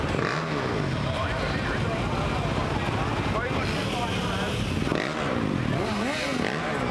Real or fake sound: real